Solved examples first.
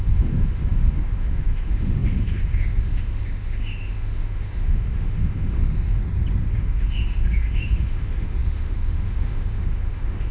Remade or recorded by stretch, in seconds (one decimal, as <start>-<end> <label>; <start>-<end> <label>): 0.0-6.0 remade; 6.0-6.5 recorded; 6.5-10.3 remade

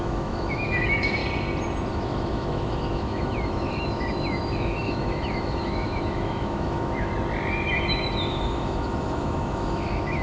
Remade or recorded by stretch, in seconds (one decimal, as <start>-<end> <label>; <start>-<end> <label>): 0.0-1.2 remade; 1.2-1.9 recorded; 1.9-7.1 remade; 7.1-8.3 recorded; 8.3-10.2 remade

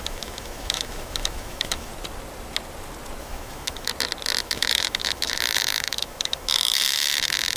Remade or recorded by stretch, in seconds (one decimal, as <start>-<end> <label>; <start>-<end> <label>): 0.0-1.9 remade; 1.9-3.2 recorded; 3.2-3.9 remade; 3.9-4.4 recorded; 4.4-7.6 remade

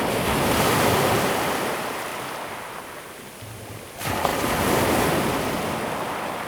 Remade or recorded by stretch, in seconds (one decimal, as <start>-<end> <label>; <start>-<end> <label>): 0.0-6.5 recorded